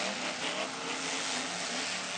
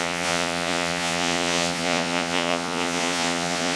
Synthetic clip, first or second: second